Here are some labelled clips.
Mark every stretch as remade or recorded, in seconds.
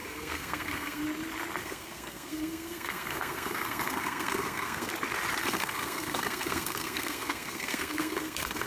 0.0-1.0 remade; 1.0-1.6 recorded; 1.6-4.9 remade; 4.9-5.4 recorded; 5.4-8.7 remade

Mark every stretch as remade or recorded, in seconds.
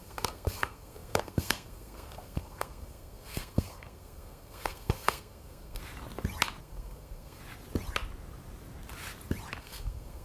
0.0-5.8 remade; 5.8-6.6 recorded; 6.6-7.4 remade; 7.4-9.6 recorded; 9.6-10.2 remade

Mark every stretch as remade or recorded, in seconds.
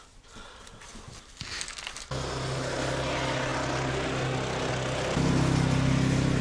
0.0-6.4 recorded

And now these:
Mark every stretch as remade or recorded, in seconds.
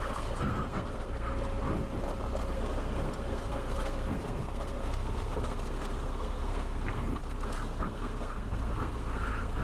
0.0-1.3 remade; 1.3-2.4 recorded; 2.4-9.6 remade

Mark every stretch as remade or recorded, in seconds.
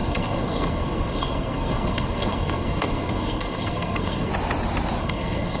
0.0-4.3 remade; 4.3-5.0 recorded; 5.0-5.6 remade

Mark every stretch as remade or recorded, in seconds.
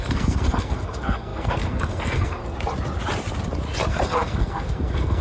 0.0-2.4 remade; 2.4-3.9 recorded; 3.9-5.2 remade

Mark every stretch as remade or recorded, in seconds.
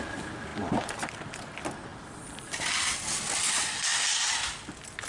0.0-5.1 recorded